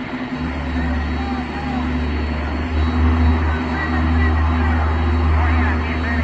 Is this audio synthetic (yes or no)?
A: no